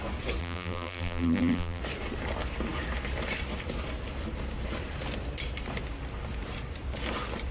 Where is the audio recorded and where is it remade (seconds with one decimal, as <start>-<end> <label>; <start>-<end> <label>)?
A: 0.0-0.4 recorded; 0.4-1.8 remade; 1.8-7.5 recorded